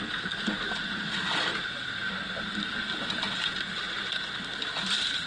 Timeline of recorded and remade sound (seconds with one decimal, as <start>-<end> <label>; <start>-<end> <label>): 0.0-5.3 recorded